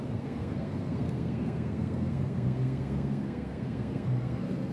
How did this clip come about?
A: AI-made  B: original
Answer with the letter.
A